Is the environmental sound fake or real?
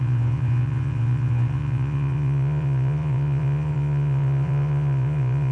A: fake